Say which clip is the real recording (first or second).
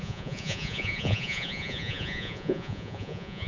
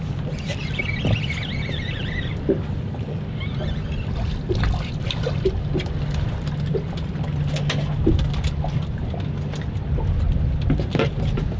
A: second